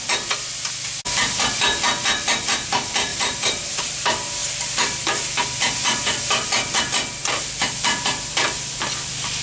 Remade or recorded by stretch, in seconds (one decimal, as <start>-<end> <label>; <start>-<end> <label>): 0.0-3.1 recorded; 3.1-4.0 remade; 4.0-9.4 recorded